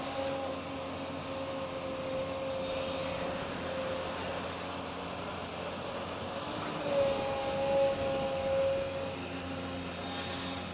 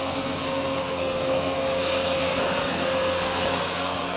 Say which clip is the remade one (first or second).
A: second